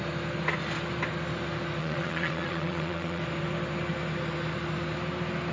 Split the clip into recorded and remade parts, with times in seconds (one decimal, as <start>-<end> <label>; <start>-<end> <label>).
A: 0.0-1.8 recorded; 1.8-3.2 remade; 3.2-5.5 recorded